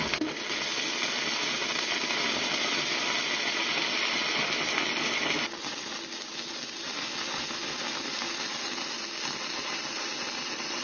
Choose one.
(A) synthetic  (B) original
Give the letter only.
B